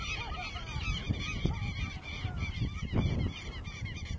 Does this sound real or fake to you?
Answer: real